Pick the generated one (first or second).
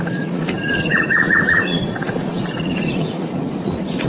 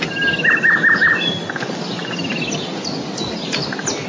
first